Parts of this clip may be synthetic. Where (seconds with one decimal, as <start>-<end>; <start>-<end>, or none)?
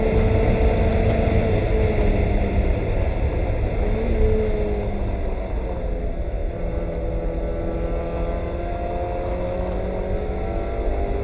none